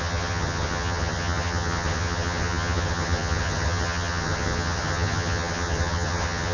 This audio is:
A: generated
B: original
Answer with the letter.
A